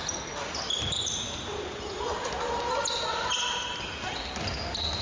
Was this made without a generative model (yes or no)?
yes